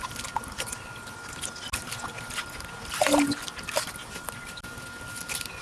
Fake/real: real